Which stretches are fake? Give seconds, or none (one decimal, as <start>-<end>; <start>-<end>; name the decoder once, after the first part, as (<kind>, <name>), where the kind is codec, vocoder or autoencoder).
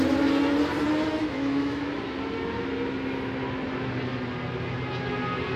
1.1-2.0 (autoencoder, DAC-VAE)